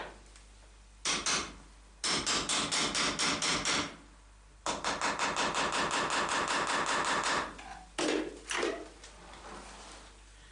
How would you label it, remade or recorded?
recorded